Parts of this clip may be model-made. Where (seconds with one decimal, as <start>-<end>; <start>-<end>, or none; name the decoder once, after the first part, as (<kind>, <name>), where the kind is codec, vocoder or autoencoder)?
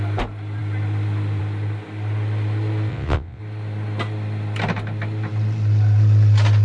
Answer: 2.9-3.4 (vocoder, WaveNeXt)